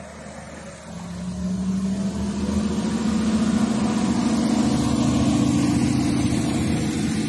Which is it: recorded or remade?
recorded